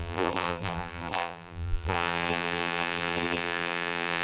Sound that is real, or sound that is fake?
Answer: fake